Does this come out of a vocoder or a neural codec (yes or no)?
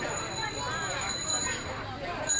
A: no